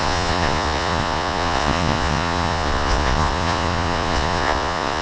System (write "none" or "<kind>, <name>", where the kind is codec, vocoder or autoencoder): vocoder, Vocos